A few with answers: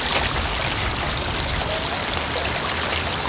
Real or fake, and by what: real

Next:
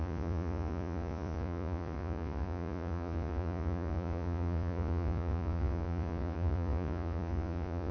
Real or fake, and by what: fake, vocoder, Vocos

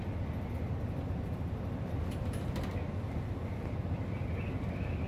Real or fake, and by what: real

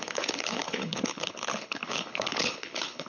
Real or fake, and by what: fake, codec, HILCodec